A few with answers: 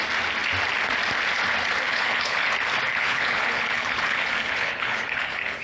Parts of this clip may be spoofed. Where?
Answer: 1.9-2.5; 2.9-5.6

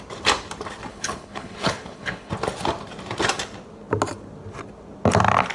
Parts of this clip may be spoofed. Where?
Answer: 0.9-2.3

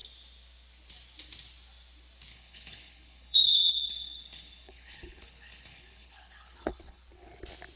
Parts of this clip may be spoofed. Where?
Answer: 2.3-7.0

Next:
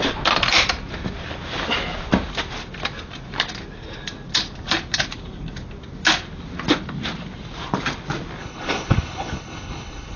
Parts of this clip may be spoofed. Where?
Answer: 8.4-10.2

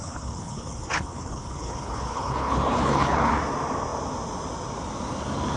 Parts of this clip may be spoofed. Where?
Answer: 0.0-3.3